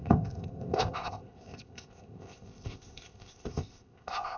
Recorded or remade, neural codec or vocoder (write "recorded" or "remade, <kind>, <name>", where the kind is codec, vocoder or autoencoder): remade, codec, ZipCodec